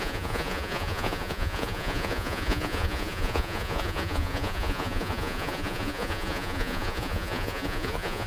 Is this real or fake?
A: fake